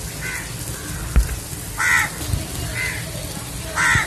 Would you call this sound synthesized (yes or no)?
no